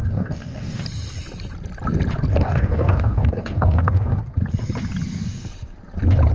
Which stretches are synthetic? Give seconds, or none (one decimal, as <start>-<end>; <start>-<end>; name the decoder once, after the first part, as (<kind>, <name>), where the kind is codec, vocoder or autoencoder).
0.0-0.8 (codec, DAC); 2.3-4.2